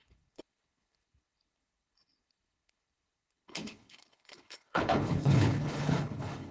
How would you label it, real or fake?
fake